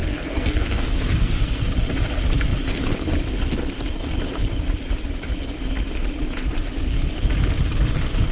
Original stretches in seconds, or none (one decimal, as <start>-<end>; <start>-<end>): 1.6-8.3